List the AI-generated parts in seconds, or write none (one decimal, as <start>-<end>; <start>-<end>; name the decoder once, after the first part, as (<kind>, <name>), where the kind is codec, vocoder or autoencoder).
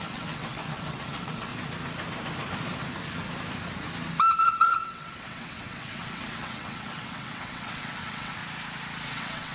0.0-1.5 (vocoder, WaveNeXt); 4.4-8.4; 9.1-9.5